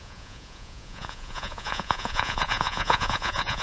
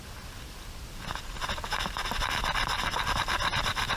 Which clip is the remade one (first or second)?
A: first